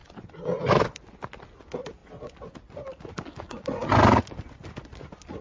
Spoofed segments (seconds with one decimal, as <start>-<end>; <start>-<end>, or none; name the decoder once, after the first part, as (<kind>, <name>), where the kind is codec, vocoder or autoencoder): none